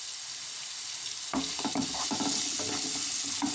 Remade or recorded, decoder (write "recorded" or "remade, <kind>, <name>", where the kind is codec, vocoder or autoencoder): recorded